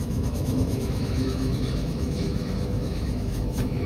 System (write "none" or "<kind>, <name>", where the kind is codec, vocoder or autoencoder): autoencoder, DAC-VAE